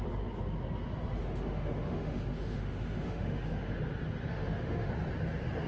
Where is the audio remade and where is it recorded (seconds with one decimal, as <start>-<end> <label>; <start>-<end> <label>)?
0.0-1.2 recorded; 1.2-3.8 remade; 3.8-4.3 recorded; 4.3-4.9 remade; 4.9-5.7 recorded

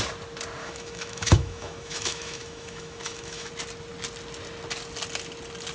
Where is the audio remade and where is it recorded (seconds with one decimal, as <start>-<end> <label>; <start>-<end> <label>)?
0.0-0.6 recorded; 0.6-3.5 remade; 3.5-5.7 recorded